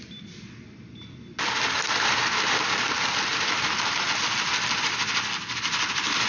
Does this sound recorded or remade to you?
recorded